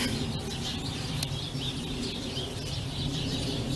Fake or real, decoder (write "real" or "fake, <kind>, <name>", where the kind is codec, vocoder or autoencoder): real